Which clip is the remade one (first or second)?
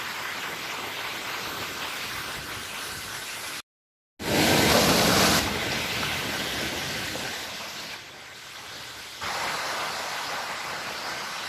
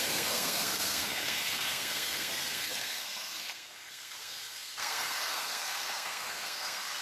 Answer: second